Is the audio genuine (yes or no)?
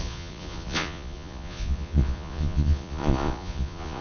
no